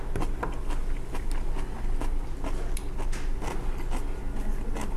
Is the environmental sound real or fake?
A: real